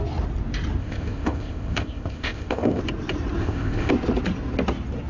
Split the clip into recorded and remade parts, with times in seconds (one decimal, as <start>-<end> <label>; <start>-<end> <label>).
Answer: 0.0-0.8 recorded; 0.8-2.8 remade; 2.8-3.4 recorded; 3.4-3.9 remade; 3.9-5.1 recorded